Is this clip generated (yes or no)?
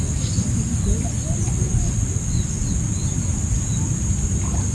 no